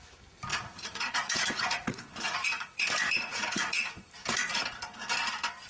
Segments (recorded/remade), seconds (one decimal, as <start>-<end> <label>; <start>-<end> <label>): 0.0-0.5 recorded; 0.5-3.9 remade; 3.9-5.7 recorded

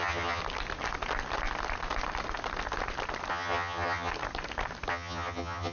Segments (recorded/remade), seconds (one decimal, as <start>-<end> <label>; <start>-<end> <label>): 0.0-0.4 remade; 0.4-3.3 recorded; 3.3-4.1 remade; 4.1-4.9 recorded; 4.9-5.7 remade